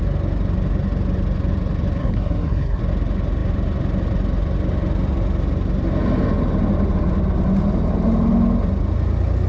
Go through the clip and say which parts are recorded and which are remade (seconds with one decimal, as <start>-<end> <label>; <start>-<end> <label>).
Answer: 0.0-2.0 recorded; 2.0-2.8 remade; 2.8-9.5 recorded